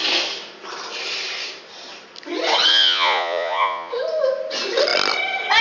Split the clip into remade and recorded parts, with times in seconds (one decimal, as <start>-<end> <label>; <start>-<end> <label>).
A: 0.0-2.7 recorded; 2.7-3.9 remade; 3.9-5.6 recorded